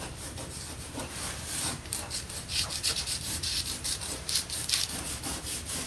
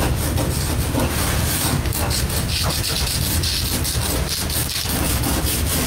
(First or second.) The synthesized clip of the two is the first